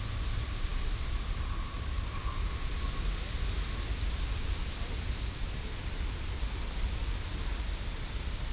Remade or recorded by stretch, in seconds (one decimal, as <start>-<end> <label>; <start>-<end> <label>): 0.0-8.5 recorded